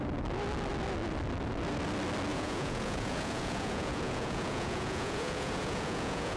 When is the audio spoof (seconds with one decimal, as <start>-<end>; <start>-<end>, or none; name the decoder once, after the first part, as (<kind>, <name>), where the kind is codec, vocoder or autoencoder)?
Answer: 2.3-6.4 (vocoder, Vocos)